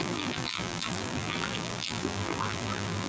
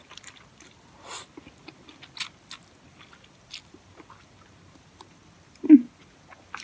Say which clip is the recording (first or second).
second